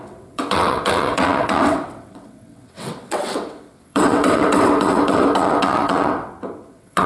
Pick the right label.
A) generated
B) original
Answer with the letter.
A